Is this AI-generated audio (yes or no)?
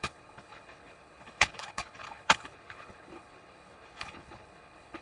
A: yes